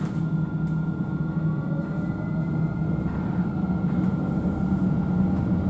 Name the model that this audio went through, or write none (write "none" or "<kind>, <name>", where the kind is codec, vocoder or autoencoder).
none